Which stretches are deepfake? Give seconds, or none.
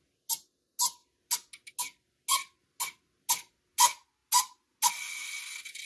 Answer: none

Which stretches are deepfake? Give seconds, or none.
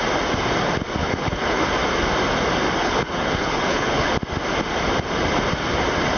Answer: 1.0-1.6 (codec, HILCodec); 2.8-4.1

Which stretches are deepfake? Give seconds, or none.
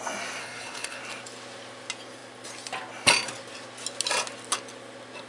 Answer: 0.4-1.0 (codec, HILCodec)